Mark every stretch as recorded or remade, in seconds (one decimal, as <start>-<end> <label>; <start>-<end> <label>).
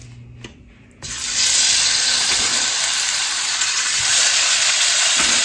0.0-2.1 recorded; 2.1-2.5 remade; 2.5-3.2 recorded; 3.2-5.4 remade